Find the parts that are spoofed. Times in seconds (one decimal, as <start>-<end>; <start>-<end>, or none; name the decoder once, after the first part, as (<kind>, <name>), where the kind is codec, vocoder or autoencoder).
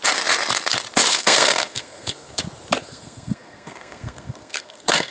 1.1-2.4 (codec, SNAC); 2.8-5.1